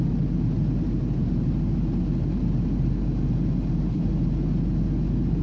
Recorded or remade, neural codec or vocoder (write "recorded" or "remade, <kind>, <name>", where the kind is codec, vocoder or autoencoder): recorded